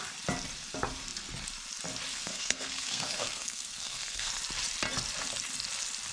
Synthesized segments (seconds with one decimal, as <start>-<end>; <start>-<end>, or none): 2.1-4.3